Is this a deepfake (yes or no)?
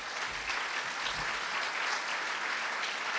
no